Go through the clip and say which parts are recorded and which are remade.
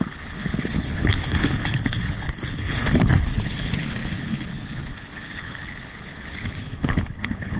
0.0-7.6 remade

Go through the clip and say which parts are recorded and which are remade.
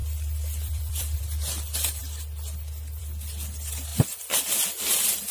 0.0-1.2 remade; 1.2-3.9 recorded; 3.9-4.4 remade; 4.4-5.3 recorded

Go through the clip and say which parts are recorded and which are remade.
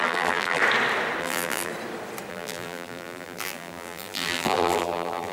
0.0-0.6 remade; 0.6-1.2 recorded; 1.2-1.7 remade; 1.7-2.3 recorded; 2.3-5.3 remade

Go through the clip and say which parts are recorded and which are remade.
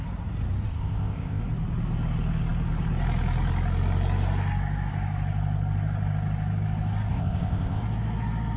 0.0-0.7 recorded; 0.7-1.4 remade; 1.4-7.1 recorded; 7.1-7.8 remade; 7.8-8.6 recorded